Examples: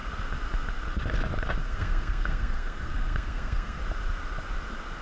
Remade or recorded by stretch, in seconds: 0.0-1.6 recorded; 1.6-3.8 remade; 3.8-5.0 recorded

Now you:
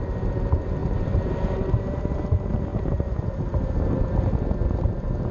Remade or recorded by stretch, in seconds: 0.0-0.8 recorded; 0.8-2.2 remade; 2.2-5.3 recorded

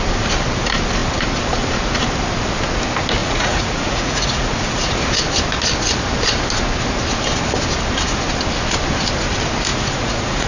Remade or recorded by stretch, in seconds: 0.0-3.2 recorded; 3.2-4.9 remade; 4.9-9.7 recorded; 9.7-10.5 remade

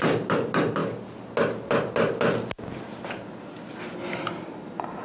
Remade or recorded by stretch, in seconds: 0.0-5.0 recorded

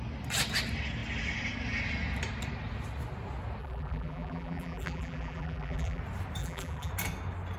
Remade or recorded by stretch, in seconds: 0.0-3.6 recorded; 3.6-6.0 remade; 6.0-6.4 recorded; 6.4-6.9 remade; 6.9-7.6 recorded

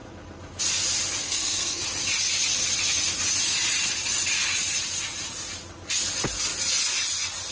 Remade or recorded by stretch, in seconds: 0.0-1.2 recorded; 1.2-1.8 remade; 1.8-7.5 recorded

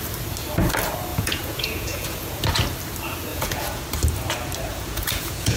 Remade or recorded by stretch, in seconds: 0.0-1.1 recorded; 1.1-2.4 remade; 2.4-3.3 recorded; 3.3-3.8 remade; 3.8-4.7 recorded; 4.7-5.6 remade

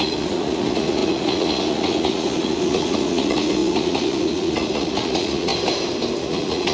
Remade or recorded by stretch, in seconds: 0.0-5.5 remade; 5.5-6.2 recorded; 6.2-6.7 remade